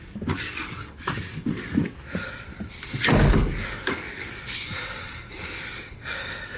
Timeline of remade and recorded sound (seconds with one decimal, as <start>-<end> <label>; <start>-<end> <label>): 0.0-2.5 remade; 2.5-3.2 recorded; 3.2-6.6 remade

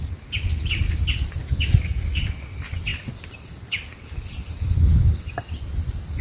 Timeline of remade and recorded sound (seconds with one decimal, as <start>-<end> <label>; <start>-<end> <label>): 0.0-1.4 recorded; 1.4-2.2 remade; 2.2-6.2 recorded

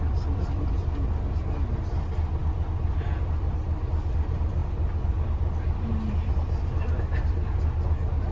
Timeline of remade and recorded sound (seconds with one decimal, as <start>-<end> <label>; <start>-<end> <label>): 0.0-8.3 recorded

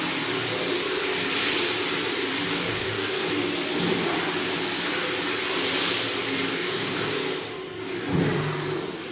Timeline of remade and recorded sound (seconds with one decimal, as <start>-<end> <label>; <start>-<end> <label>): 0.0-2.5 recorded; 2.5-3.3 remade; 3.3-6.5 recorded; 6.5-7.1 remade; 7.1-9.1 recorded

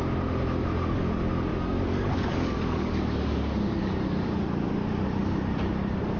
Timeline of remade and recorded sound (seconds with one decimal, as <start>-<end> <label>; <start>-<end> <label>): 0.0-1.5 recorded; 1.5-4.7 remade; 4.7-6.2 recorded

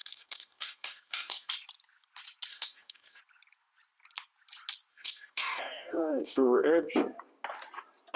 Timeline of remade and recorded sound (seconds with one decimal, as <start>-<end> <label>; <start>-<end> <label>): 0.0-1.5 remade; 1.5-2.5 recorded; 2.5-3.2 remade; 3.2-4.9 recorded; 4.9-6.9 remade; 6.9-8.2 recorded